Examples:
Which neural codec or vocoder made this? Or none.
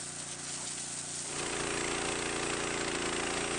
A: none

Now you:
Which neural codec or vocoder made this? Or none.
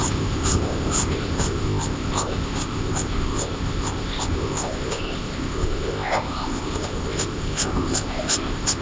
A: codec, ZipCodec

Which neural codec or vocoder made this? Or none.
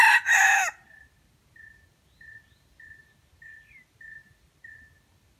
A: none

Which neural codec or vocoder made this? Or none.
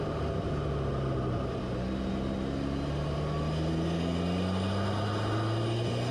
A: none